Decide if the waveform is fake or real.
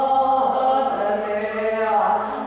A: real